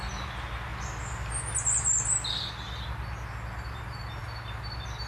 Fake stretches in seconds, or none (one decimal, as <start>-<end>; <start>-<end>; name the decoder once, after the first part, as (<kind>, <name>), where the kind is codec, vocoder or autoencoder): none